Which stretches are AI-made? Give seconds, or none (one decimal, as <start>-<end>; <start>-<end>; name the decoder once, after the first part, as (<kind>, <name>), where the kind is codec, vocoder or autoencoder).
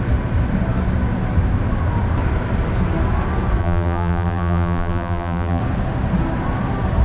3.6-5.6 (vocoder, BigVGAN v2)